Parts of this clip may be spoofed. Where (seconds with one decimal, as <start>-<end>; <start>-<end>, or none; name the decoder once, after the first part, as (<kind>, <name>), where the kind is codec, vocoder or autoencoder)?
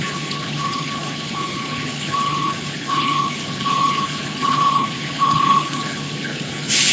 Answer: 0.0-6.9 (codec, HILCodec)